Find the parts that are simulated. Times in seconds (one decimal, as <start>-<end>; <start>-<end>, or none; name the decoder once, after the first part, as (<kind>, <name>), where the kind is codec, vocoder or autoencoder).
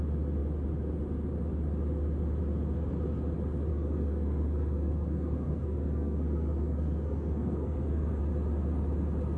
3.7-8.2 (codec, SNAC)